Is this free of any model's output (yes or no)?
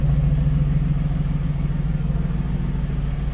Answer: yes